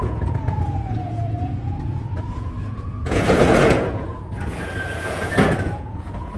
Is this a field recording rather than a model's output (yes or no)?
no